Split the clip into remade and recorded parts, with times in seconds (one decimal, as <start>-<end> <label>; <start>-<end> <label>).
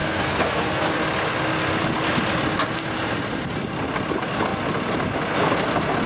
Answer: 0.0-0.9 remade; 0.9-6.1 recorded